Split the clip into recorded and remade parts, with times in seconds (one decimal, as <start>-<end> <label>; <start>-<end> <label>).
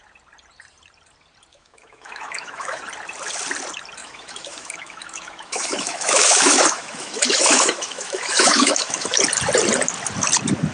0.0-1.5 recorded; 1.5-2.8 remade; 2.8-4.0 recorded; 4.0-9.2 remade; 9.2-10.7 recorded